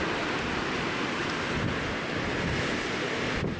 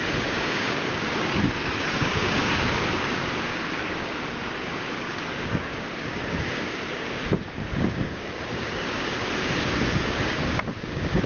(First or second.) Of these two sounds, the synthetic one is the second